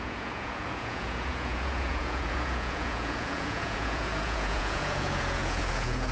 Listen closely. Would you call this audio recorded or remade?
remade